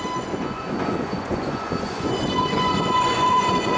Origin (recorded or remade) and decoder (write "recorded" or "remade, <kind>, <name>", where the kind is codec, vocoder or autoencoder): remade, vocoder, Vocos